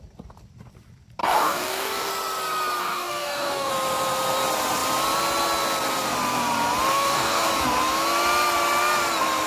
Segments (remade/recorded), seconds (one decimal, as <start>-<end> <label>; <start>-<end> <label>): 0.0-1.2 recorded; 1.2-2.1 remade; 2.1-2.8 recorded; 2.8-3.7 remade; 3.7-6.9 recorded; 6.9-7.5 remade; 7.5-9.5 recorded